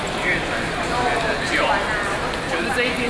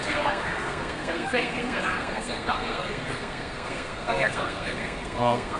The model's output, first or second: second